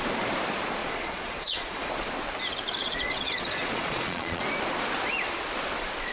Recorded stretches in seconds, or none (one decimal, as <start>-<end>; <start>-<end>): 0.0-0.8; 1.9-2.8; 4.4-6.1